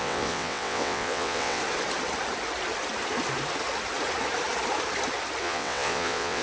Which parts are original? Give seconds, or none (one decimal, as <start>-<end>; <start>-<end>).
1.6-5.4

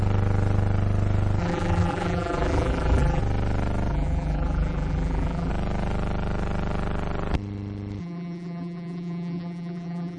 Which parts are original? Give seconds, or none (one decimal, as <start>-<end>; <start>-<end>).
0.0-1.4; 3.2-3.9; 5.5-8.0